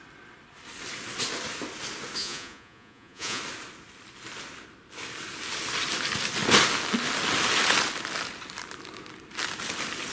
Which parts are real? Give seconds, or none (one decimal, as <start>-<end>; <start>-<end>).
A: 0.0-2.2; 3.4-10.1